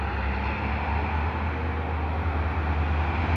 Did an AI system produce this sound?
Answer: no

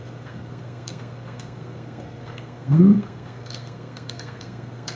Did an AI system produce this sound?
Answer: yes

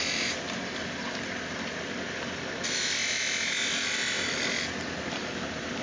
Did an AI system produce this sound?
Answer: yes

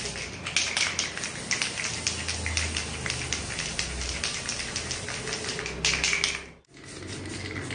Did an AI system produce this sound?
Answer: no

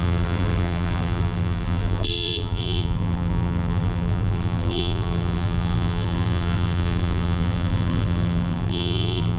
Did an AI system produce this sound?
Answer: yes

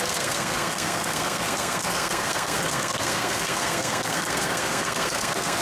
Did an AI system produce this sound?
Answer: yes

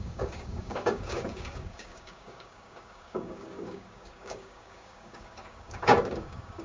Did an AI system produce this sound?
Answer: yes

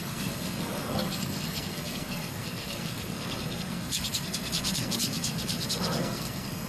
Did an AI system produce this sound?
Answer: yes